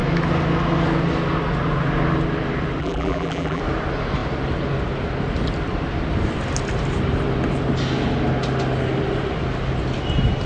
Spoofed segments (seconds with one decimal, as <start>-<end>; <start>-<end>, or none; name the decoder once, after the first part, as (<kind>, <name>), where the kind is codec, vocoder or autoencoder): 2.8-3.6 (vocoder, BigVGAN v2)